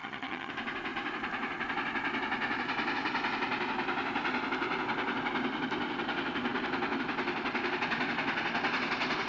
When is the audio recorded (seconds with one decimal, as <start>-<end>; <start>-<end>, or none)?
0.5-9.3